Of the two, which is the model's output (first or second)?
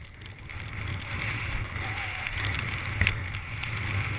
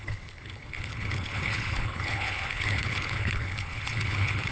second